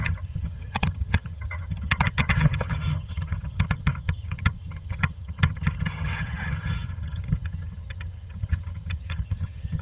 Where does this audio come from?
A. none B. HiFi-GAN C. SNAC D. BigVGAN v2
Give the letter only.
B